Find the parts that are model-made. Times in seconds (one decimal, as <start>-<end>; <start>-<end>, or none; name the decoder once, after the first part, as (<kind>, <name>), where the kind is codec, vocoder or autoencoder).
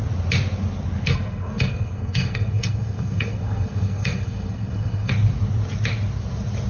1.1-5.1 (codec, SNAC)